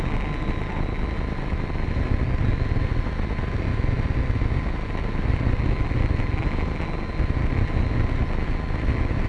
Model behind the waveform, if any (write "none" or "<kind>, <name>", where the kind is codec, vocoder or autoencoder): none